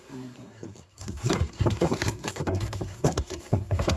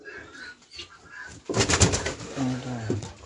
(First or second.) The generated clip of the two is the first